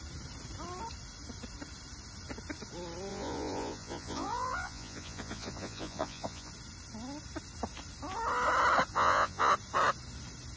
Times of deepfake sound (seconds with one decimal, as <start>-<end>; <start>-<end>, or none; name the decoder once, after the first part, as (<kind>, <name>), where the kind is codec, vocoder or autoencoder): 3.1-6.5 (vocoder, Vocos); 8.9-9.5